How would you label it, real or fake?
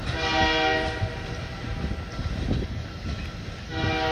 real